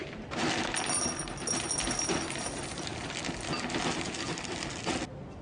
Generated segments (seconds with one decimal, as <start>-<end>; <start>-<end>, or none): none